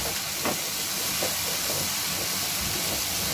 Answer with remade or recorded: recorded